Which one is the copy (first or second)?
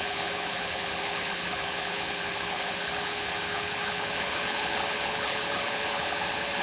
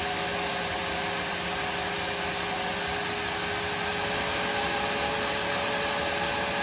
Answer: first